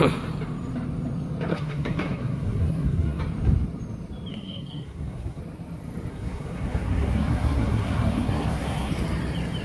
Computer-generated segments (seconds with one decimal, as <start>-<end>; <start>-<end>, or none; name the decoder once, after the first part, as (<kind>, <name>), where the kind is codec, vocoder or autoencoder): 1.5-3.2 (codec, SNAC); 4.3-5.4; 6.1-8.9